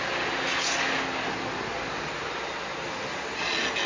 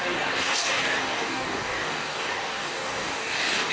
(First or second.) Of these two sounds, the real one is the first